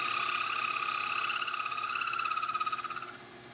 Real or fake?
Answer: real